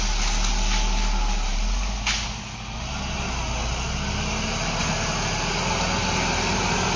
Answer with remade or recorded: recorded